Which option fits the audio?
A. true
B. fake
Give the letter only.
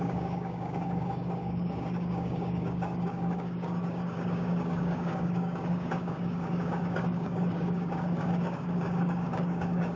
B